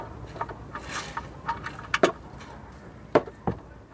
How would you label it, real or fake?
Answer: real